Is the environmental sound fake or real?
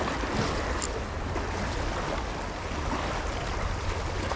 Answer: real